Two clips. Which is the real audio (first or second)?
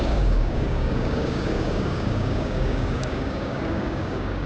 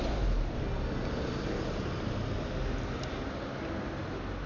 second